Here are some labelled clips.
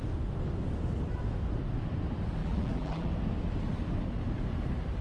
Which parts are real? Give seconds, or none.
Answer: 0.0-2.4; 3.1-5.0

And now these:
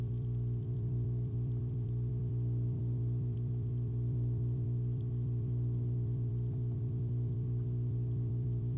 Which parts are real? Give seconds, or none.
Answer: none

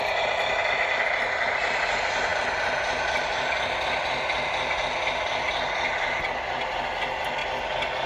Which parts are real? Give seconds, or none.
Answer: 0.0-8.1